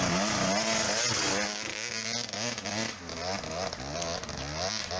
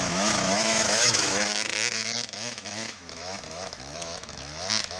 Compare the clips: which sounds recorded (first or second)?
first